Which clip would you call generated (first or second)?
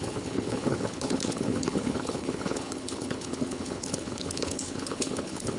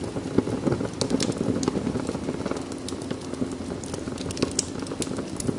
first